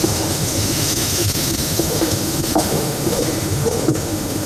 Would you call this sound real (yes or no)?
no